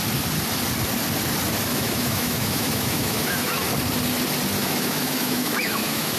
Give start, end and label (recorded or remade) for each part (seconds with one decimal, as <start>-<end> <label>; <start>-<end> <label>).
0.0-1.7 recorded; 1.7-3.5 remade; 3.5-4.6 recorded; 4.6-6.2 remade